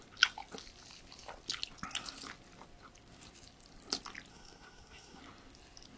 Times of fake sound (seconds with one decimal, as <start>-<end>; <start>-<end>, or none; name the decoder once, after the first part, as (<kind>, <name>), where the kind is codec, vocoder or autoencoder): 4.3-5.2 (codec, SNAC)